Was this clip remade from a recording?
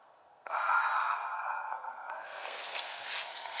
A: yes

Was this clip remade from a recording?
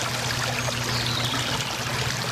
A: no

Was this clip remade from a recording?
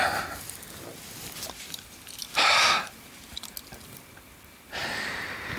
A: no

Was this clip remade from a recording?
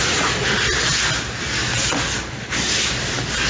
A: no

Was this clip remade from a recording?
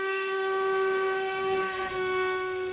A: yes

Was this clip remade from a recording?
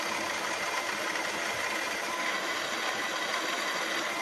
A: no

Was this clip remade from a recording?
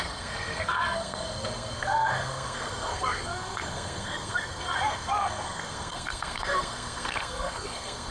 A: yes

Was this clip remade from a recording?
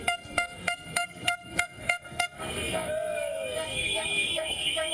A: yes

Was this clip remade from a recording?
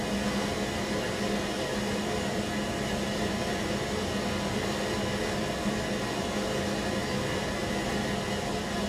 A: no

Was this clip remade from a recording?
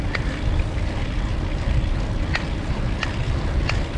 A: no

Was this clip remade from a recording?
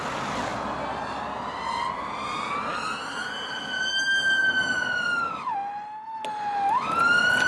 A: no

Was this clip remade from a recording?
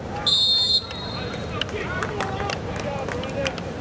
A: no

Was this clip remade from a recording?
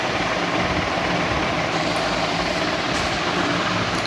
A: no